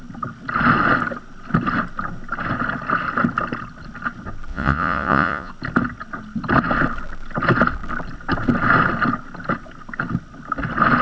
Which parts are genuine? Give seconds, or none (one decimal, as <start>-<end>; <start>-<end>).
0.0-4.5; 5.5-11.0